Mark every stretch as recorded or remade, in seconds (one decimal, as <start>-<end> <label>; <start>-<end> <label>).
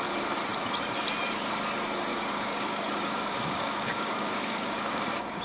0.0-2.1 recorded; 2.1-5.4 remade